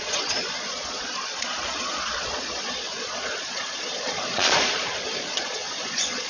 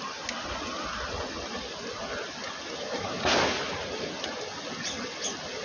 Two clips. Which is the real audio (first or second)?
second